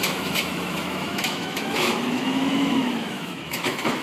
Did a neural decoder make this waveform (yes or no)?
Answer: yes